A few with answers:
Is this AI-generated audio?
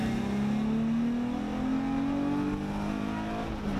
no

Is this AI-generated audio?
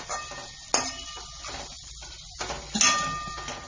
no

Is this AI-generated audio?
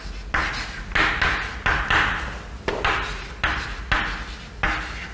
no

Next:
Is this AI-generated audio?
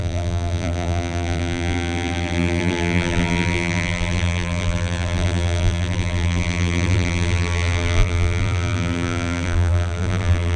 yes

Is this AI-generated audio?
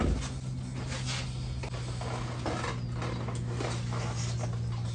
no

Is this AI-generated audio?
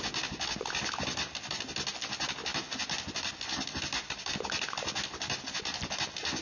no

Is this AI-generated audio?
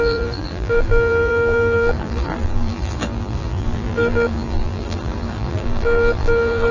yes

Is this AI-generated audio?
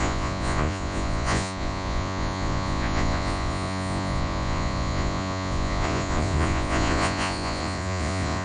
yes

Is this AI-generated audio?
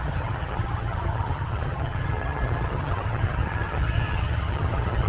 yes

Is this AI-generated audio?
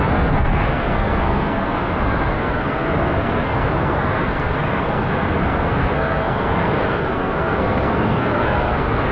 yes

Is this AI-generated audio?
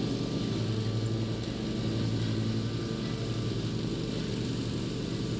no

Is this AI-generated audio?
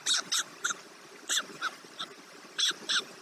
no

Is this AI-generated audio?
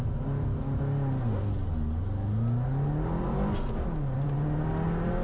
no